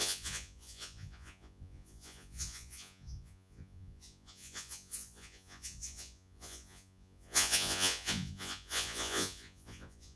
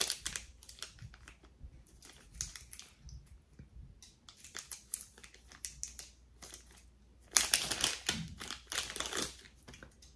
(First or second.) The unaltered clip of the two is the second